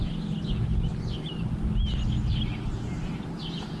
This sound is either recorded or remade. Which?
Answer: recorded